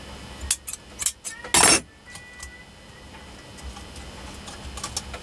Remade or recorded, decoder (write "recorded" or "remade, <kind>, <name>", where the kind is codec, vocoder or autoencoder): recorded